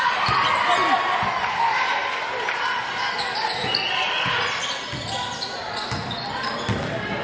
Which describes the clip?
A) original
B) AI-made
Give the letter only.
A